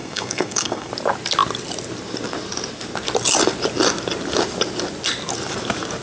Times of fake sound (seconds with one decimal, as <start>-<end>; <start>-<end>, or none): 0.0-0.9